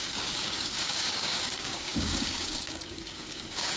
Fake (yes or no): yes